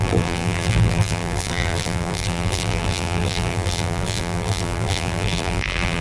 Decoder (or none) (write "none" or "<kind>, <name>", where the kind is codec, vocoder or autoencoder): vocoder, BigVGAN v2